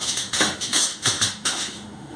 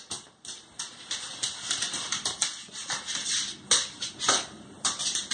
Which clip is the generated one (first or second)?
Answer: first